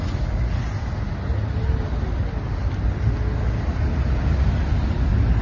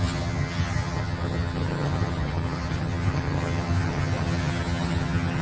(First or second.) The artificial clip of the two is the second